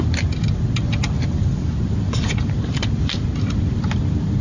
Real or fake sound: real